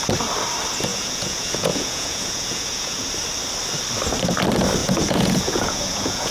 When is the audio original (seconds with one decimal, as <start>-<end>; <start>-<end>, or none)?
0.0-0.9; 3.1-4.8